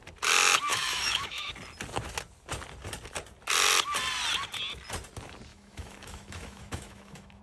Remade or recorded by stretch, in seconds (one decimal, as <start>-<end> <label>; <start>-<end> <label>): 0.0-0.7 recorded; 0.7-1.5 remade; 1.5-5.5 recorded; 5.5-7.4 remade